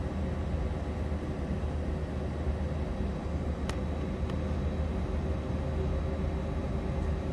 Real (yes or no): yes